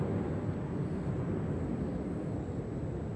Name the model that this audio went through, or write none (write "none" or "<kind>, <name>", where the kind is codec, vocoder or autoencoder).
none